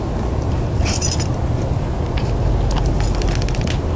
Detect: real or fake real